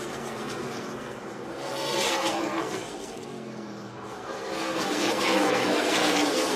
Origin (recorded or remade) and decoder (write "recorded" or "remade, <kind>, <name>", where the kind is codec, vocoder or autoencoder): remade, codec, SNAC